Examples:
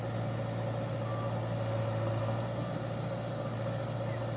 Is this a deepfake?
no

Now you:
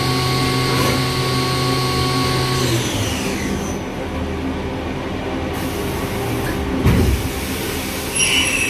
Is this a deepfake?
no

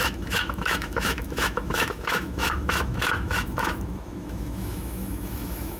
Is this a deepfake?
yes